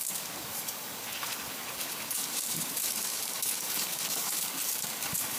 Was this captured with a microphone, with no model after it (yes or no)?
no